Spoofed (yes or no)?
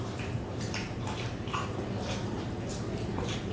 yes